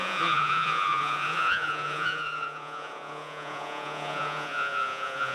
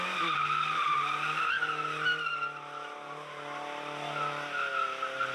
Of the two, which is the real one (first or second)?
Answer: second